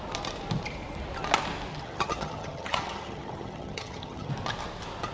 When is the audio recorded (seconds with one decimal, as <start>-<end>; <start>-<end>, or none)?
0.0-1.7; 4.3-5.1